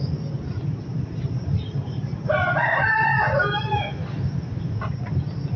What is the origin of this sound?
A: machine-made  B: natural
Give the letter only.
B